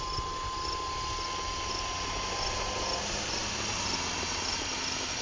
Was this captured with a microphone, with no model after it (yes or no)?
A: yes